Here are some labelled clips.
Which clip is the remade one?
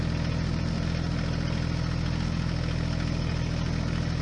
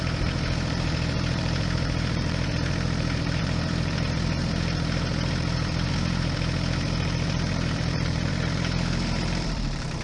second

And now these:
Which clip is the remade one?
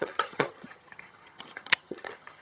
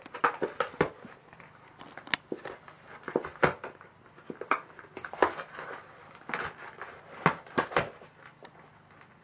first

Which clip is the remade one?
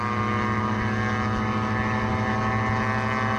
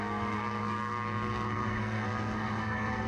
second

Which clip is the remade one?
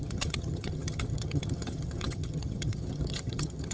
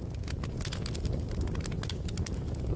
first